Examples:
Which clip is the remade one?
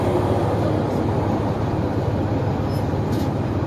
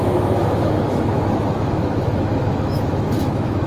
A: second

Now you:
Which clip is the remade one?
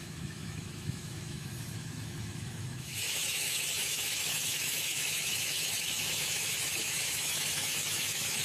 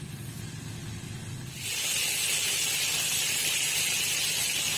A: first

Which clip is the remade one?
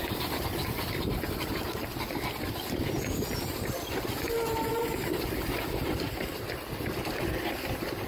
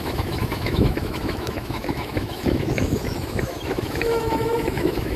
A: second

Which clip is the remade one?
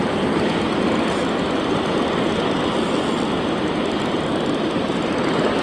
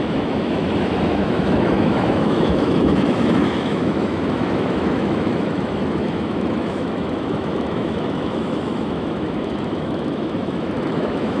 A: second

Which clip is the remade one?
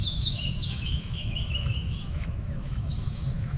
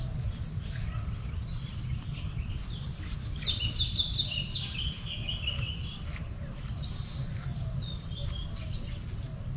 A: first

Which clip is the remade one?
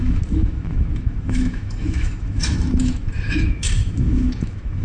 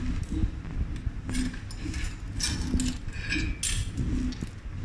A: first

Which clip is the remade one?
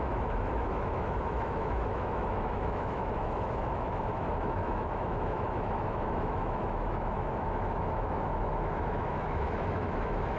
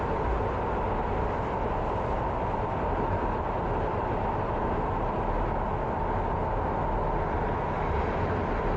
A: first